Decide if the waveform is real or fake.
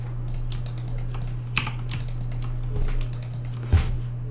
real